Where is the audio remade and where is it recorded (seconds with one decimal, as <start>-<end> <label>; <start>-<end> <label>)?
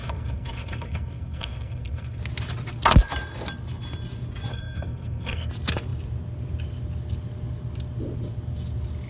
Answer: 0.0-2.2 remade; 2.2-4.5 recorded; 4.5-5.5 remade; 5.5-9.1 recorded